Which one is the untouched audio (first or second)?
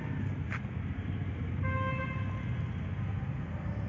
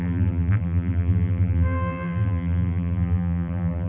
first